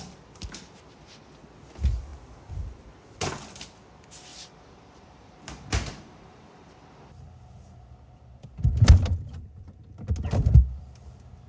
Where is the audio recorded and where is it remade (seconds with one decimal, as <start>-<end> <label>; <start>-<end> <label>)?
0.0-4.3 recorded; 4.3-6.9 remade; 6.9-11.5 recorded